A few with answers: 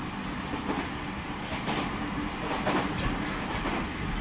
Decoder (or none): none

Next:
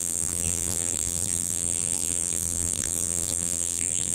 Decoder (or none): vocoder, BigVGAN v2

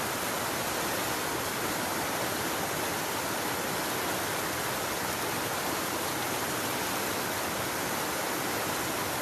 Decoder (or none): none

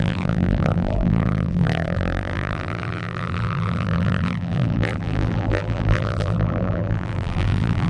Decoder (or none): vocoder, BigVGAN v2